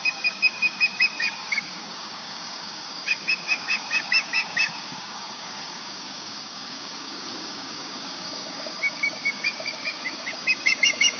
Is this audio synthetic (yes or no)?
yes